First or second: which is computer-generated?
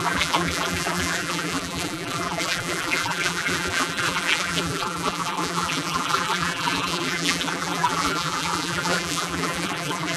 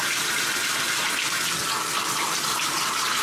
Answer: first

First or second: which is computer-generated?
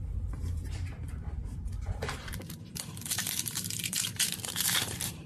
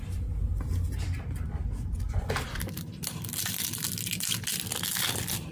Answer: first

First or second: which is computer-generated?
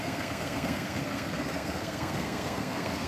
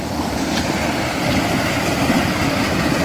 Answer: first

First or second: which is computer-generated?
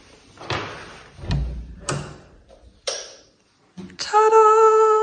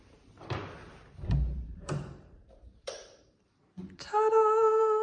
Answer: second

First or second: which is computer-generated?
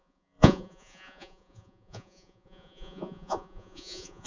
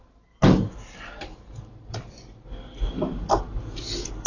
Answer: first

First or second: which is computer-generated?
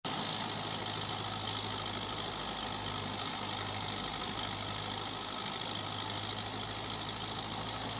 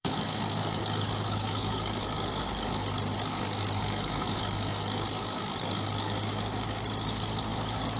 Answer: second